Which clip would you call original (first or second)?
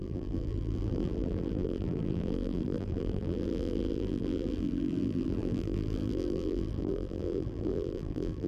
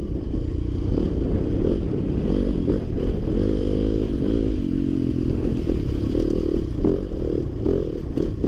second